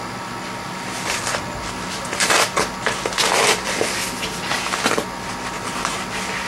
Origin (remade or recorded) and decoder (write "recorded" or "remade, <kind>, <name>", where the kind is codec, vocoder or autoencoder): recorded